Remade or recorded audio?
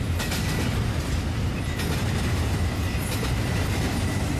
recorded